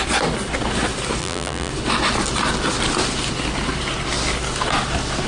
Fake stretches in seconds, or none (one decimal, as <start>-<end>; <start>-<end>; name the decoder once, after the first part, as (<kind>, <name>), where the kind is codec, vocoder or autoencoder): 1.2-1.7 (vocoder, BigVGAN v2)